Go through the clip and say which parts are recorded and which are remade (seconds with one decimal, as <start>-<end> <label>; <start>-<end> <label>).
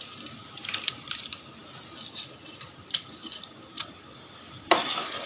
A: 0.0-1.6 remade; 1.6-2.2 recorded; 2.2-5.3 remade